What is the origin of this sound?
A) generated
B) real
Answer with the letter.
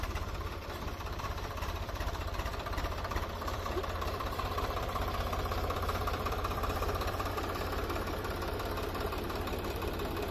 A